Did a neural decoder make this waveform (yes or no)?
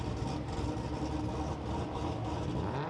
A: no